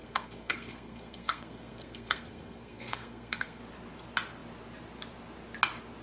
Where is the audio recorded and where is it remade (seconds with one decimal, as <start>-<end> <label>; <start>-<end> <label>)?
0.0-3.6 remade; 3.6-6.0 recorded